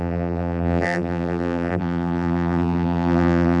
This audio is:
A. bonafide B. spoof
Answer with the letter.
B